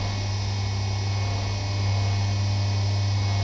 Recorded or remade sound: recorded